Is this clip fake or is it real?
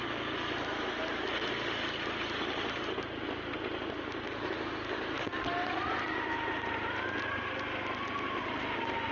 real